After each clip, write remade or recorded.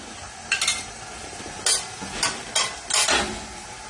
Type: recorded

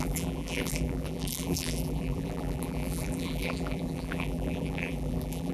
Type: remade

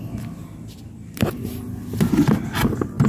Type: recorded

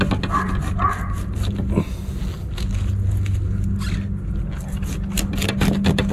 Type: recorded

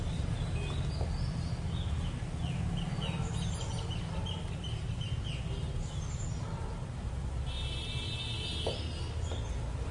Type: recorded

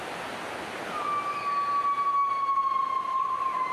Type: recorded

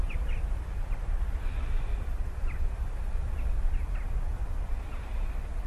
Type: remade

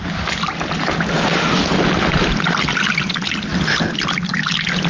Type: recorded